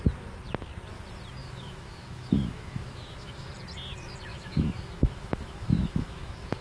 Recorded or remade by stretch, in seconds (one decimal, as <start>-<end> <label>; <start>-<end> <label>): 0.0-1.4 recorded; 1.4-3.5 remade; 3.5-4.3 recorded; 4.3-6.6 remade